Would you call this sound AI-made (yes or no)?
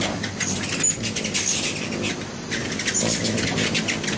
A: no